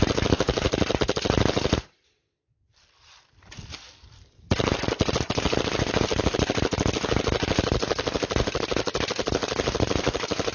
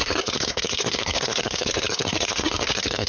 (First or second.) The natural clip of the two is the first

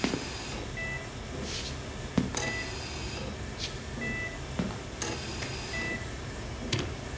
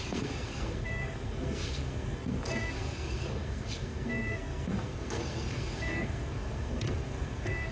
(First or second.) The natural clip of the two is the first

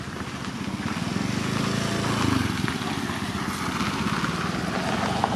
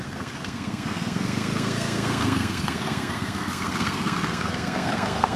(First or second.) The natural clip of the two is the first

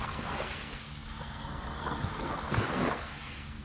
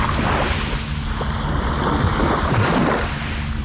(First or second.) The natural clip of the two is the second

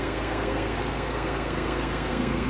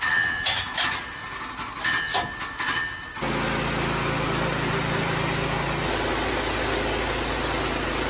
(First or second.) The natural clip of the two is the second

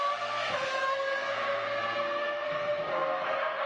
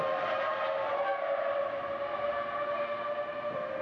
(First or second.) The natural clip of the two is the second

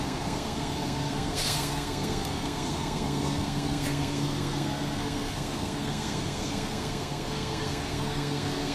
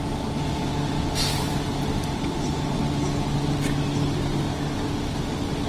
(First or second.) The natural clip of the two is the second